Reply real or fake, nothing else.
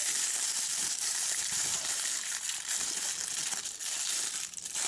fake